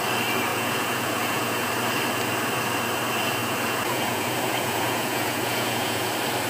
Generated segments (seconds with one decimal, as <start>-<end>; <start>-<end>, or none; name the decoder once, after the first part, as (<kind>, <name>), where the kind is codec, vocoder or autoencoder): 0.5-1.7 (vocoder, Vocos); 3.4-6.1